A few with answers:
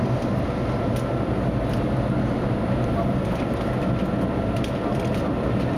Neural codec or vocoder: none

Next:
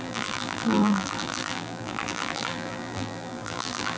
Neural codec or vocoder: vocoder, BigVGAN v2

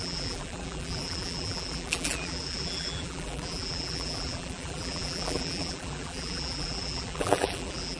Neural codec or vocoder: vocoder, BigVGAN v2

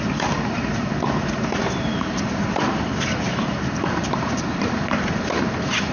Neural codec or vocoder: vocoder, BigVGAN v2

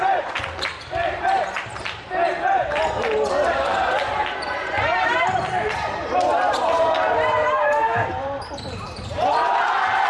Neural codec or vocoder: vocoder, BigVGAN v2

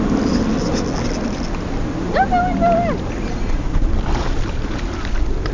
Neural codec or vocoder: none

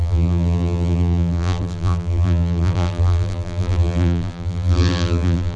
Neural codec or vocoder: vocoder, BigVGAN v2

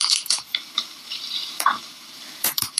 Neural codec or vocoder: vocoder, BigVGAN v2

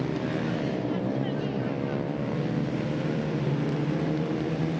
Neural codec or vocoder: vocoder, BigVGAN v2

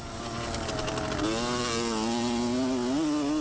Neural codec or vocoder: none